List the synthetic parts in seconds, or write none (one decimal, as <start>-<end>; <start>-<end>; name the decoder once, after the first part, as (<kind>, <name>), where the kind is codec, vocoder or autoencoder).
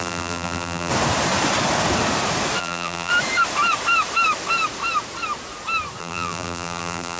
0.0-0.9 (vocoder, BigVGAN v2); 2.6-3.1; 6.0-7.2